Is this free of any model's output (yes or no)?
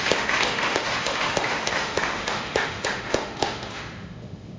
no